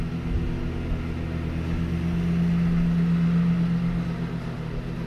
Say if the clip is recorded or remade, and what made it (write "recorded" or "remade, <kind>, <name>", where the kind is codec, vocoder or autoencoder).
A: recorded